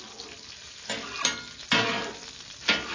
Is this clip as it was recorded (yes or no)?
yes